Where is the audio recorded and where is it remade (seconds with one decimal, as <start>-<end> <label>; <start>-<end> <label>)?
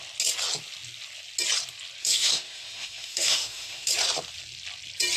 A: 0.0-2.0 recorded; 2.0-3.9 remade; 3.9-5.2 recorded